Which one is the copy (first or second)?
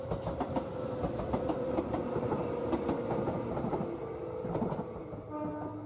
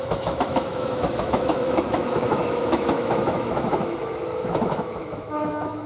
second